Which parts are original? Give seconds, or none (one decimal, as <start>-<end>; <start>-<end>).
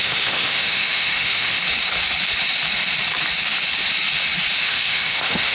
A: 1.6-4.6